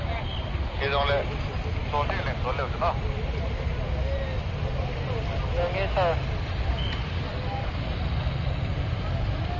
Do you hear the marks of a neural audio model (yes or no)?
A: no